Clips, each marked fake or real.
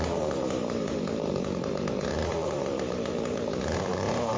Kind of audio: fake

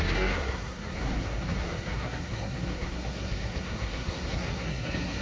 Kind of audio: fake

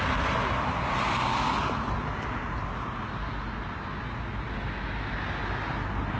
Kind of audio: real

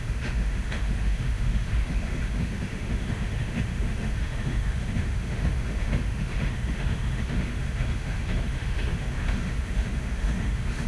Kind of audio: fake